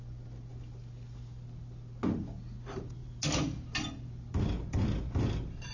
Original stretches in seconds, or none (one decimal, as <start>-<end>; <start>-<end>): 0.0-5.7